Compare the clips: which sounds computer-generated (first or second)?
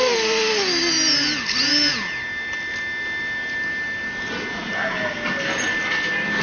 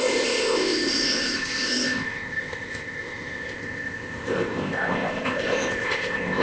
second